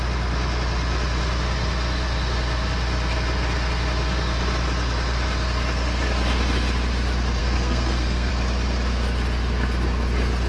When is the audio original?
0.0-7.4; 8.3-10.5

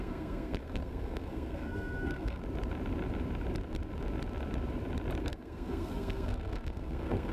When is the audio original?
2.4-5.2

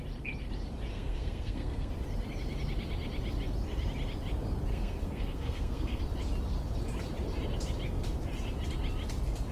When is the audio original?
0.0-0.9; 1.9-4.7; 6.0-9.5

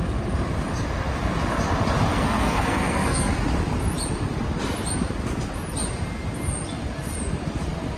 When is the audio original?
0.0-2.1; 3.3-8.0

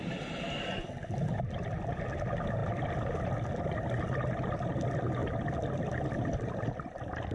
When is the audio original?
0.0-7.3

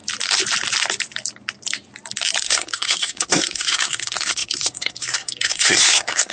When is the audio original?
0.0-2.4

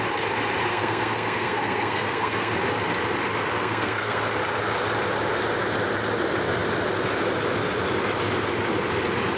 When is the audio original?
0.0-0.7; 2.5-3.6; 4.2-9.4

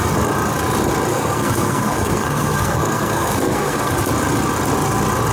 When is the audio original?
0.0-1.1; 3.9-5.3